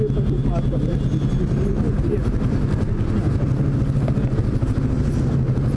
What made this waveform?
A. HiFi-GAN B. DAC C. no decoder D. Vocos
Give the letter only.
C